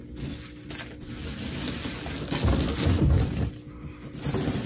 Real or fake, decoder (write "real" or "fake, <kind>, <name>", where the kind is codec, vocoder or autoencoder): real